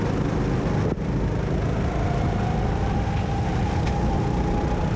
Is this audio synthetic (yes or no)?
no